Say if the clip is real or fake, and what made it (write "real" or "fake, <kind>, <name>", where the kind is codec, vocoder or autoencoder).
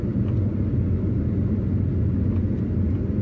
real